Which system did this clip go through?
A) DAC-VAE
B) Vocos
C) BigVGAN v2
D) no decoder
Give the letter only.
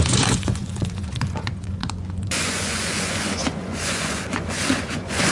B